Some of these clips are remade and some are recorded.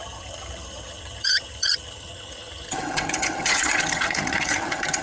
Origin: remade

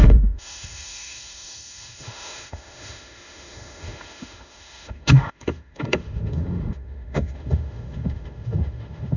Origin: remade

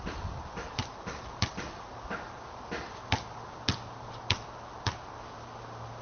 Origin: recorded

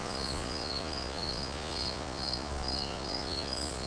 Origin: remade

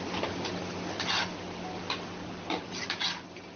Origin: recorded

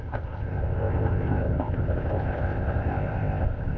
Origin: remade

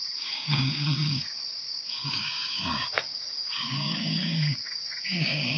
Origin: remade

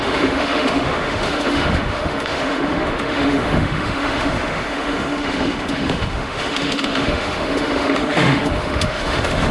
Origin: remade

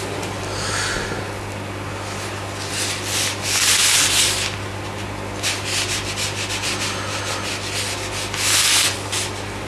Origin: recorded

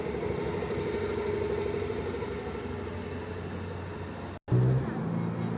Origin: recorded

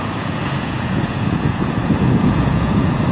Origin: remade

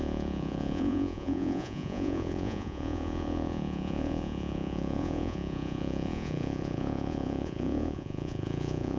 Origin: remade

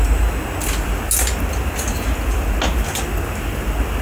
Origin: recorded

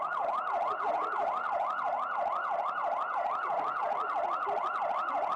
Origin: recorded